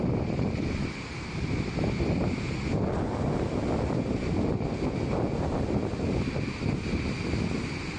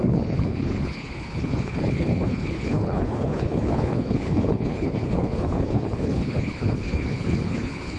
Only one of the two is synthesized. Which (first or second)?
second